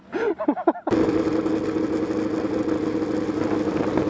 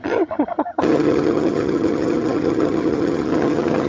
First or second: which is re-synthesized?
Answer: second